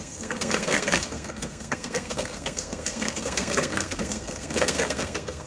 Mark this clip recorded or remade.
remade